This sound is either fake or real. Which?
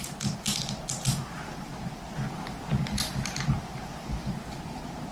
real